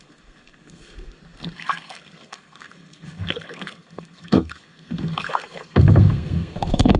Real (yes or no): no